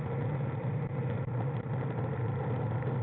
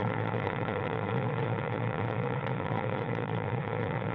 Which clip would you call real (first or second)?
first